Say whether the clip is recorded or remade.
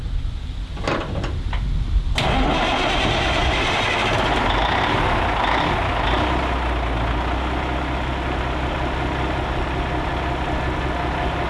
recorded